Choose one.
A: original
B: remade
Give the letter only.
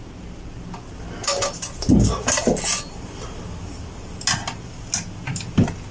A